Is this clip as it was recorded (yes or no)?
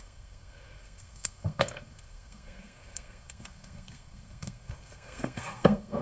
no